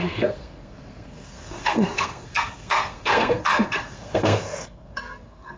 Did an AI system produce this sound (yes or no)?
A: yes